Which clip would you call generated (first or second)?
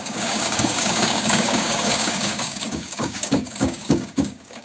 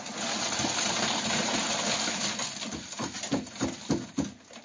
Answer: first